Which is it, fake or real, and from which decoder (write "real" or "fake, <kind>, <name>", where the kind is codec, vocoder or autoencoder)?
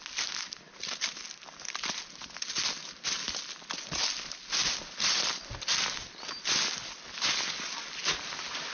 real